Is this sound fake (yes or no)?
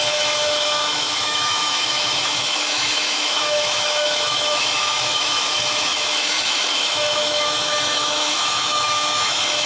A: yes